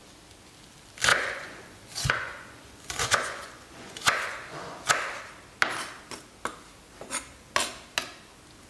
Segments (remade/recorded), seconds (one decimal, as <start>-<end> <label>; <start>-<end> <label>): 0.0-1.1 recorded; 1.1-4.9 remade; 4.9-8.7 recorded